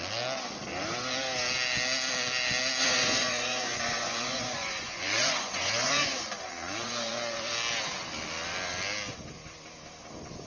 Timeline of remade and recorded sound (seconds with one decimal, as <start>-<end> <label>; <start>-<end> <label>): 0.0-2.8 recorded; 2.8-7.5 remade; 7.5-10.5 recorded